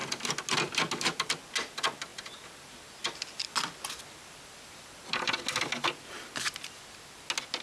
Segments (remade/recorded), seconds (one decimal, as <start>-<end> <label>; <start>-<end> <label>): 0.0-7.6 recorded